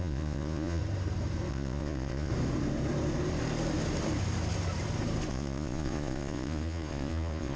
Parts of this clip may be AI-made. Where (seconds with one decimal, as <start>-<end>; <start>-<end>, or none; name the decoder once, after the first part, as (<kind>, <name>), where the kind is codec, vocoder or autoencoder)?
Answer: 0.0-0.8 (vocoder, Vocos); 1.5-2.3; 5.3-7.6